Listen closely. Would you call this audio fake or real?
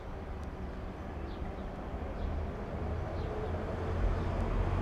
real